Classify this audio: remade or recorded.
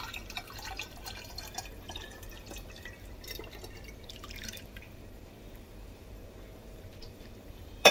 remade